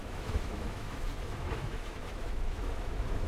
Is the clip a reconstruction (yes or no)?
yes